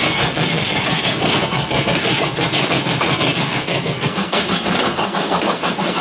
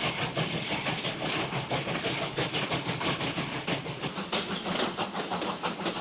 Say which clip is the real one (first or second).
second